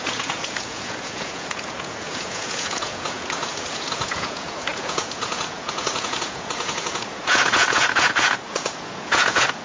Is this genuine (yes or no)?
no